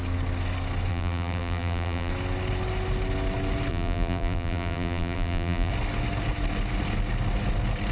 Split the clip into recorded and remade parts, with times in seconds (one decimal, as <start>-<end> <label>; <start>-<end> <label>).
0.0-0.9 recorded; 0.9-2.1 remade; 2.1-3.7 recorded; 3.7-5.7 remade; 5.7-7.9 recorded

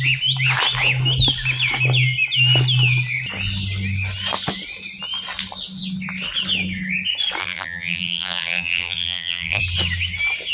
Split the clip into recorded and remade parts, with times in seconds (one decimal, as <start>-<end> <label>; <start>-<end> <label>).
0.0-7.4 recorded; 7.4-9.6 remade; 9.6-10.5 recorded

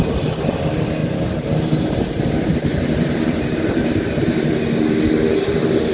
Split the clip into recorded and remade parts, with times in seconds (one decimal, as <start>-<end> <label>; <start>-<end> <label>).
0.0-1.0 recorded; 1.0-4.5 remade; 4.5-5.9 recorded

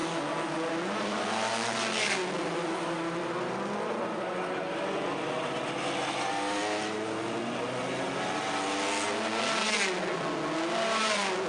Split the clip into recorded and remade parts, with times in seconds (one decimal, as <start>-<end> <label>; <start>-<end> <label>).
0.0-11.5 recorded

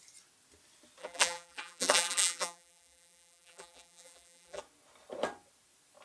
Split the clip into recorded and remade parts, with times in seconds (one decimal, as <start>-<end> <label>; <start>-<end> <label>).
0.0-1.0 recorded; 1.0-4.6 remade; 4.6-6.0 recorded

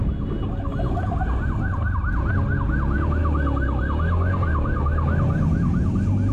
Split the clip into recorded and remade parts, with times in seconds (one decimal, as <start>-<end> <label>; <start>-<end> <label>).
0.0-6.3 recorded

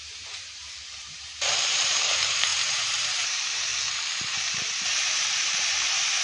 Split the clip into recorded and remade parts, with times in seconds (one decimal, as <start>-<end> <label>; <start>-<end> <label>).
0.0-3.7 remade; 3.7-4.3 recorded; 4.3-6.2 remade

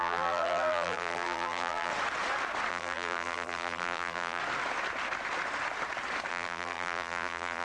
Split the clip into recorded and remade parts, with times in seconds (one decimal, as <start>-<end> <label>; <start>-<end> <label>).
0.0-1.9 remade; 1.9-2.7 recorded; 2.7-4.4 remade; 4.4-6.3 recorded; 6.3-7.6 remade